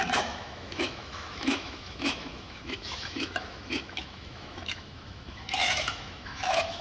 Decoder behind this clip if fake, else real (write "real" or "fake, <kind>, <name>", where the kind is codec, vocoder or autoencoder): fake, autoencoder, DAC-VAE